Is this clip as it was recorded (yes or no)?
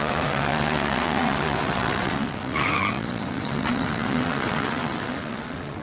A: no